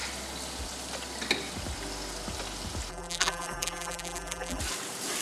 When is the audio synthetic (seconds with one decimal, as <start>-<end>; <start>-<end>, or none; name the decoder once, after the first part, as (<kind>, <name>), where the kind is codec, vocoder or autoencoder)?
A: 2.9-4.6 (vocoder, BigVGAN v2)